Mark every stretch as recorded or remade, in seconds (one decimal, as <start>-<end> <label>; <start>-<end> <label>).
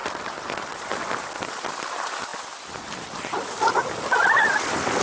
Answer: 0.0-0.7 remade; 0.7-2.3 recorded; 2.3-5.0 remade